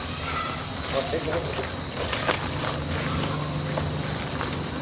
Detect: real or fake real